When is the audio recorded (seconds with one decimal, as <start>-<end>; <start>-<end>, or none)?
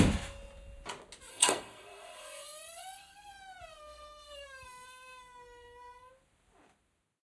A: 0.0-1.3; 3.3-3.7; 6.1-7.4